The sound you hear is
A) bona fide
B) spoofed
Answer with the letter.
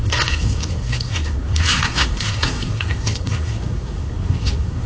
B